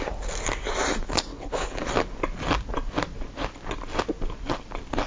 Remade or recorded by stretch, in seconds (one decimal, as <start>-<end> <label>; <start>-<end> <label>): 0.0-1.3 recorded; 1.3-1.9 remade; 1.9-5.1 recorded